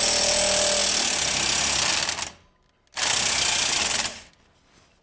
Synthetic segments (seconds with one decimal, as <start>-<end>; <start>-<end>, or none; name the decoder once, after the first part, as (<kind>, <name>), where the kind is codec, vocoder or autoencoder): none